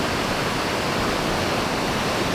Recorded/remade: recorded